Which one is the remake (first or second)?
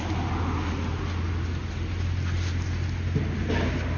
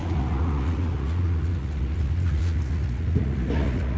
second